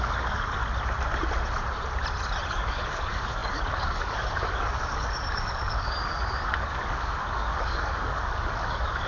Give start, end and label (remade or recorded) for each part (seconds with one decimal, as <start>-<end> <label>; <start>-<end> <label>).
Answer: 0.0-0.6 remade; 0.6-2.5 recorded; 2.5-9.1 remade